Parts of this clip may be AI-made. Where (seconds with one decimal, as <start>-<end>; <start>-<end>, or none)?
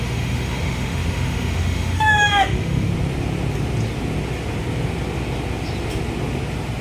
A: 0.0-2.9